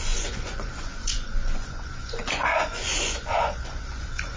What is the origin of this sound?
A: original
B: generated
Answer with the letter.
B